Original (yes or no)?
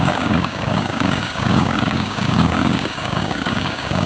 no